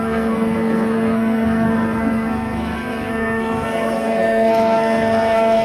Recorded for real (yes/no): no